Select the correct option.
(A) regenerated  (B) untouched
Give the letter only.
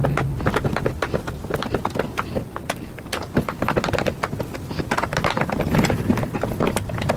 B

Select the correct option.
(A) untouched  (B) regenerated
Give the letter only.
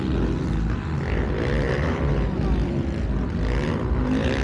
A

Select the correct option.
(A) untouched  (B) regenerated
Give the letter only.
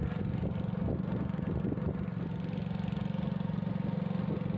A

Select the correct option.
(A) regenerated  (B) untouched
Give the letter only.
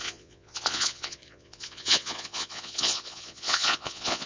A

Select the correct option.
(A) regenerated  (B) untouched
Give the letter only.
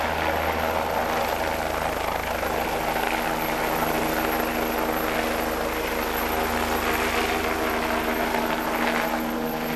B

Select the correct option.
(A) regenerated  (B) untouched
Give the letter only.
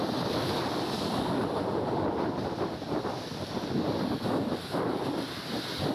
B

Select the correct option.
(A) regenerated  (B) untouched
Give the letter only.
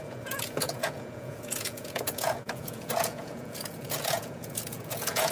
A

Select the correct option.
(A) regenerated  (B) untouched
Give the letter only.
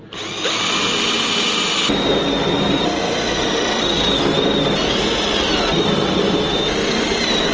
B